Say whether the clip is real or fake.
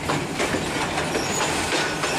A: real